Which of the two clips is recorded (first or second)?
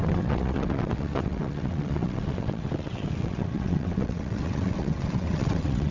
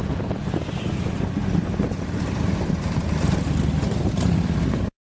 second